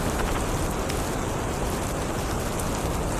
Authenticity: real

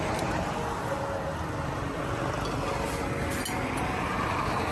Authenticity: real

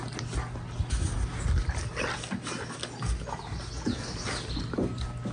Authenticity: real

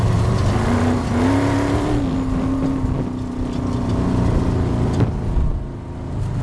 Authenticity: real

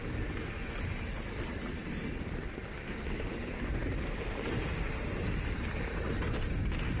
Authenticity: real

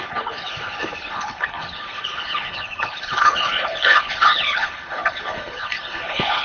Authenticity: fake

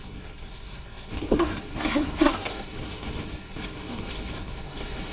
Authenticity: fake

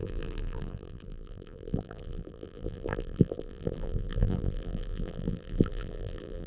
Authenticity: fake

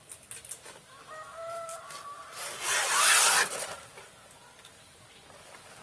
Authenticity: real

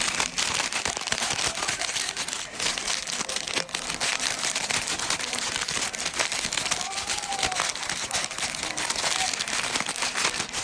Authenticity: real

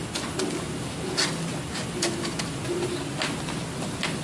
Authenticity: real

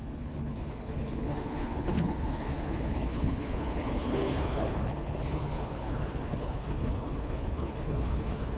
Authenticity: fake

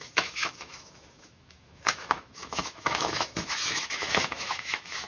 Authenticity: fake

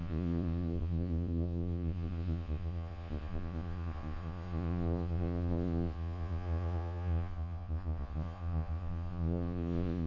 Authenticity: fake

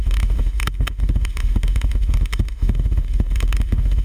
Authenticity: fake